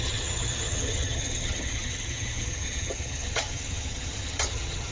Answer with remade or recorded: remade